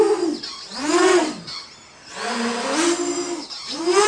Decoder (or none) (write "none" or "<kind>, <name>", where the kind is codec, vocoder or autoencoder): none